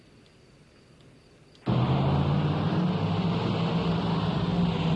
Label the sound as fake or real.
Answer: real